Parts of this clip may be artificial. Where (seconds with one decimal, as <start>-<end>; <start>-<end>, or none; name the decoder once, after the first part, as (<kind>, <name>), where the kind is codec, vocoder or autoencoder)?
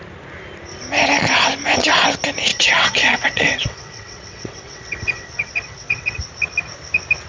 2.5-6.2 (vocoder, WaveNeXt)